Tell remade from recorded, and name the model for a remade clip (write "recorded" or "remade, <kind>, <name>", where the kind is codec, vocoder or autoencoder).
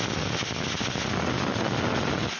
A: recorded